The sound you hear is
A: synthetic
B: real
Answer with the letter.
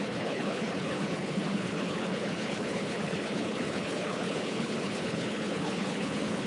A